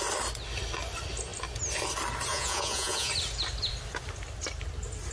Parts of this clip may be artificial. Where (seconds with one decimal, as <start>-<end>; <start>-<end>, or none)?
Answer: 2.3-3.1